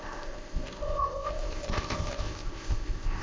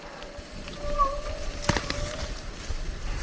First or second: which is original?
second